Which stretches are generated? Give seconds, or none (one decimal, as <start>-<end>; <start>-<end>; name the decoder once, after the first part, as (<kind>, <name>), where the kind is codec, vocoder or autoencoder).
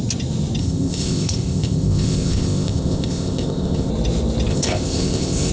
0.6-3.9 (codec, ZipCodec); 4.5-5.5